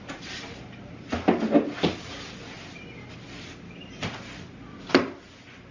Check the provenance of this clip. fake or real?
fake